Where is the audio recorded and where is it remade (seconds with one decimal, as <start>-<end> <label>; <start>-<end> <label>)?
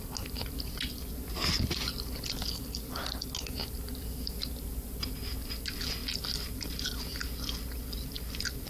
0.0-8.7 recorded